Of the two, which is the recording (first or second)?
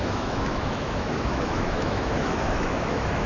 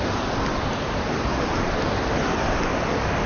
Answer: second